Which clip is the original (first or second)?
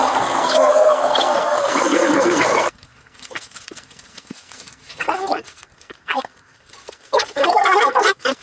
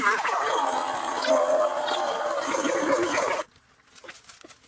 second